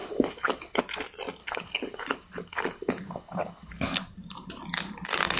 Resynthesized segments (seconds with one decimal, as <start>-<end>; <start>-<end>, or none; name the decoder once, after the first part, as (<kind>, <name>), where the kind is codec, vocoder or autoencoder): 0.0-0.8 (codec, HILCodec); 1.4-4.0

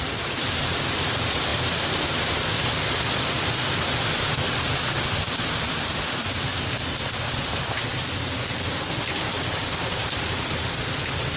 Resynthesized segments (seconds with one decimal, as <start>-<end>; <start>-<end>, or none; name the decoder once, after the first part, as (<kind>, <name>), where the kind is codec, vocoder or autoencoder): none

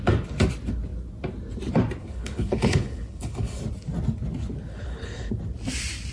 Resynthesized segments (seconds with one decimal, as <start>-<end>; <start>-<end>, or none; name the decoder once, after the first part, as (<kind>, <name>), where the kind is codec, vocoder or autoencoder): 2.0-3.6 (codec, HILCodec); 4.7-5.3

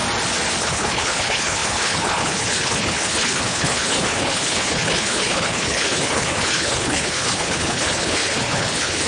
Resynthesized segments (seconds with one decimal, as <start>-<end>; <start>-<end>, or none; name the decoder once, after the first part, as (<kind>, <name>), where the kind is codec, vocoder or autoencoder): 0.6-9.1 (codec, HILCodec)

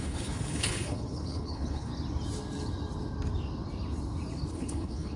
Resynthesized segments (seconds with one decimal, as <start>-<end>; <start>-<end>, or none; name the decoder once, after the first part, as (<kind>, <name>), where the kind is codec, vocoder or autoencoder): 0.0-1.9 (codec, HILCodec); 4.5-5.2